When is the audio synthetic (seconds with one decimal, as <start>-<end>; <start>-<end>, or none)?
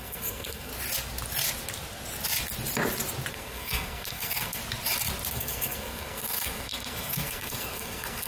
0.0-0.7; 3.3-4.6; 5.3-8.3